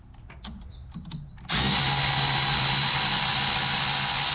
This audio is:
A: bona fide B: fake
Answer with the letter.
A